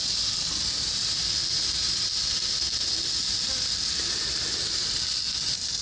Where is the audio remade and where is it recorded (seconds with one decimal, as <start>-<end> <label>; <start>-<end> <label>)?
0.0-5.8 recorded